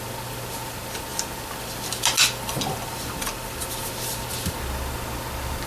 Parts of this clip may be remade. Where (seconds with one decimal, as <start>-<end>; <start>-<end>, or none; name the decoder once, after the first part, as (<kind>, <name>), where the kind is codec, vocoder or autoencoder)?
none